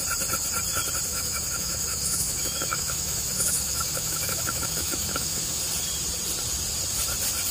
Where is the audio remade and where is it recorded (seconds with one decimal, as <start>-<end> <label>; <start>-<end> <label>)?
0.0-1.1 recorded; 1.1-5.6 remade; 5.6-7.5 recorded